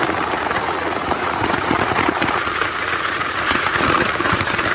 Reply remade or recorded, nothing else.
remade